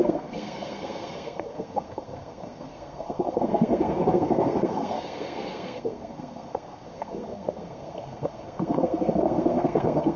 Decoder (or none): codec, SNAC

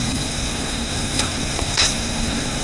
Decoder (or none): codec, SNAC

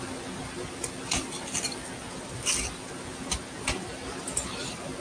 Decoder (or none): none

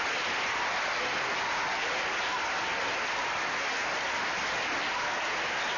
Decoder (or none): none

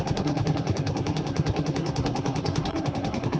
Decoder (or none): codec, SNAC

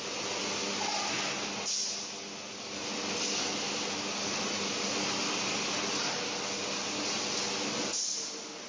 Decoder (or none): none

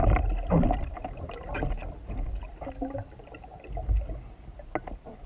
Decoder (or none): none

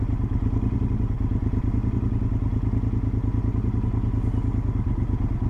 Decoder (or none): none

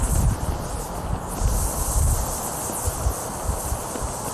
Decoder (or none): none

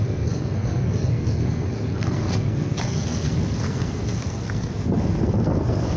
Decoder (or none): codec, SNAC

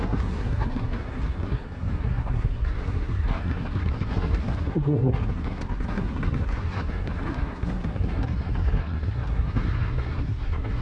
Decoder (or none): codec, SNAC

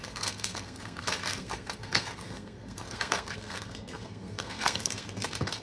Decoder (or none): codec, SNAC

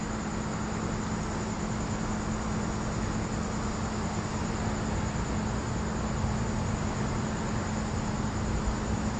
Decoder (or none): none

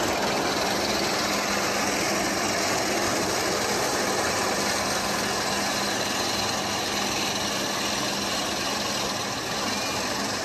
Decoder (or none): none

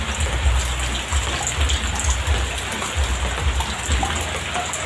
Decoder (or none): none